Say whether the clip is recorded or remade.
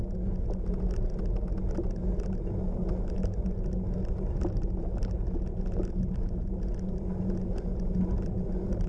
recorded